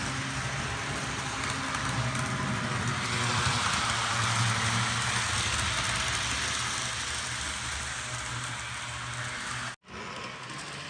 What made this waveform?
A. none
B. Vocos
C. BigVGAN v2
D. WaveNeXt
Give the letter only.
A